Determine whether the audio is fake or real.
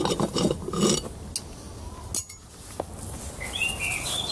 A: real